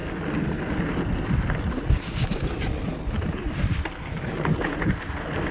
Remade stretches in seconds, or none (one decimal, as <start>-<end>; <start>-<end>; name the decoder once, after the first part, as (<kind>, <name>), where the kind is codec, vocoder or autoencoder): none